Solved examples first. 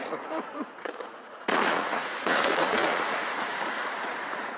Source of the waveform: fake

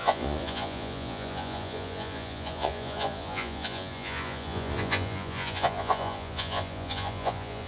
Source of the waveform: fake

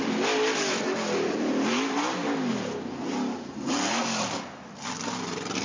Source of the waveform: real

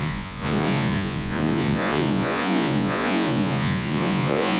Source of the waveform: fake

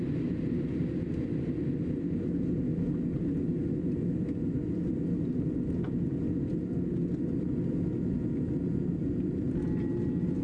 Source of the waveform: real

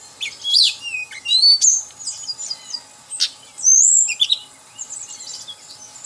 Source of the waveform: real